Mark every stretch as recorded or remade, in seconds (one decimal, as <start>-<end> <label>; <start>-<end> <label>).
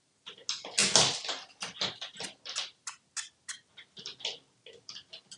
0.0-5.4 recorded